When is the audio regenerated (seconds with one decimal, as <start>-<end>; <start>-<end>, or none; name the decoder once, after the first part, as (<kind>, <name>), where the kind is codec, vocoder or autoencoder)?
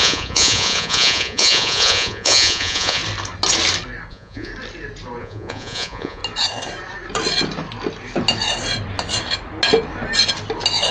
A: 0.0-3.0 (vocoder, Vocos); 4.1-4.5; 5.2-6.2